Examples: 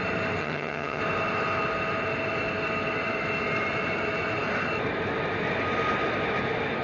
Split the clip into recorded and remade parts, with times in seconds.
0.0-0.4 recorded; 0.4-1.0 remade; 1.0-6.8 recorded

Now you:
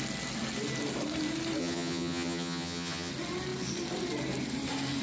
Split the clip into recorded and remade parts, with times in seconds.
0.0-1.6 recorded; 1.6-3.1 remade; 3.1-5.0 recorded

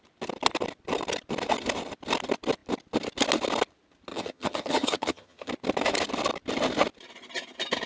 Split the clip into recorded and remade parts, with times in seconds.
0.0-4.1 recorded; 4.1-5.5 remade; 5.5-7.9 recorded

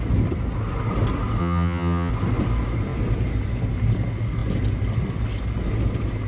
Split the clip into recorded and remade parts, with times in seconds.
0.0-1.4 recorded; 1.4-2.1 remade; 2.1-6.3 recorded

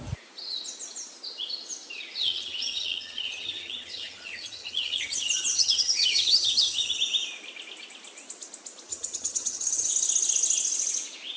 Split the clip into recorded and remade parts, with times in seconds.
0.0-2.2 recorded; 2.2-7.0 remade; 7.0-8.9 recorded; 8.9-9.9 remade; 9.9-11.4 recorded